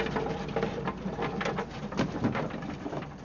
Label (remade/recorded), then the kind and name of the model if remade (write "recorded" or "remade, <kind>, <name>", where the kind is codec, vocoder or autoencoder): remade, vocoder, BigVGAN v2